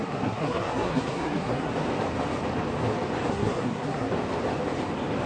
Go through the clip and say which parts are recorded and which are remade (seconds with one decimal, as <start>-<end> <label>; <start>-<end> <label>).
0.0-1.7 remade; 1.7-3.3 recorded; 3.3-4.1 remade; 4.1-5.3 recorded